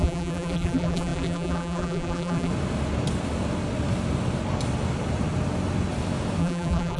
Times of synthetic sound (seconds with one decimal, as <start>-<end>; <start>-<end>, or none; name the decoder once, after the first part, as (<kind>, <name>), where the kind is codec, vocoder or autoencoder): 0.0-2.5 (vocoder, BigVGAN v2); 6.4-7.0